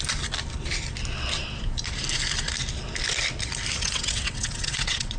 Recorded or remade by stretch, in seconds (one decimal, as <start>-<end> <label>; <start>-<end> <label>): 0.0-3.8 recorded; 3.8-5.2 remade

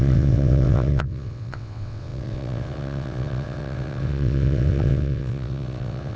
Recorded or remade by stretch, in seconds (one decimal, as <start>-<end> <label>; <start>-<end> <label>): 0.0-6.2 remade

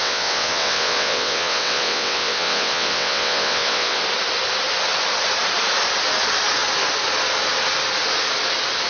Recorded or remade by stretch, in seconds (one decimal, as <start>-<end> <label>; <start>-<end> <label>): 0.0-4.0 remade; 4.0-8.9 recorded

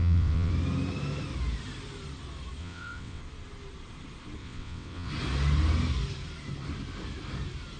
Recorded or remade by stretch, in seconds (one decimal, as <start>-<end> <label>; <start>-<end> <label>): 0.0-0.5 remade; 0.5-2.6 recorded; 2.6-3.2 remade; 3.2-4.4 recorded; 4.4-5.1 remade; 5.1-7.8 recorded

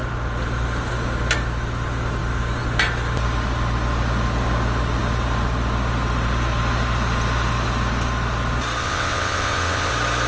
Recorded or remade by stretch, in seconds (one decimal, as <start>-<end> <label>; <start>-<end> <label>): 0.0-8.8 recorded; 8.8-9.9 remade; 9.9-10.3 recorded

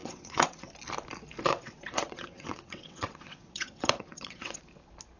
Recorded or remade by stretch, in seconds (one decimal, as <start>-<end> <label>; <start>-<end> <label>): 0.0-0.7 remade; 0.7-1.5 recorded; 1.5-4.6 remade; 4.6-5.2 recorded